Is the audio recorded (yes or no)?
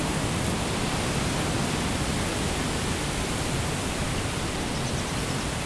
yes